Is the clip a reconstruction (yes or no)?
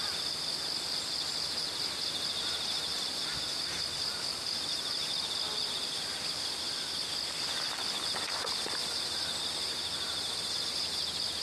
no